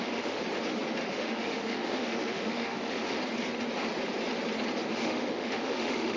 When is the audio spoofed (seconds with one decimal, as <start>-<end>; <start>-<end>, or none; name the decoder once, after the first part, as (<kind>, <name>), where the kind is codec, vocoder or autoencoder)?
0.0-0.4 (autoencoder, DAC-VAE); 1.1-3.2; 4.9-6.2